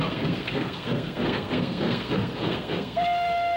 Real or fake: fake